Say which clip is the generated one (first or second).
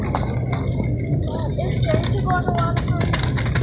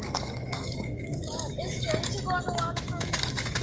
second